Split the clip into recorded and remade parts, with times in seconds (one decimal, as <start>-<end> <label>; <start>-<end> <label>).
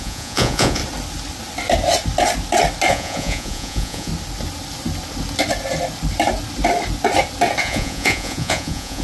0.0-0.8 remade; 0.8-2.9 recorded; 2.9-4.1 remade; 4.1-7.6 recorded; 7.6-9.0 remade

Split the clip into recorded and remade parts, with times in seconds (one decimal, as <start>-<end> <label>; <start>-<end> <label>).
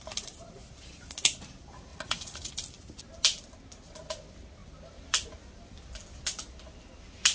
0.0-1.9 recorded; 1.9-2.5 remade; 2.5-7.3 recorded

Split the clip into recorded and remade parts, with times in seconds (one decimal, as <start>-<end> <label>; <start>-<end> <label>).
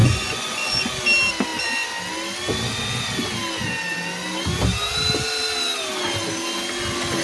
0.0-1.0 remade; 1.0-7.2 recorded